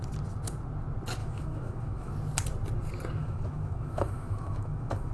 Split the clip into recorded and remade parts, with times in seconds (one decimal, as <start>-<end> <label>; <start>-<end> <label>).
0.0-1.2 recorded; 1.2-2.1 remade; 2.1-3.2 recorded; 3.2-5.1 remade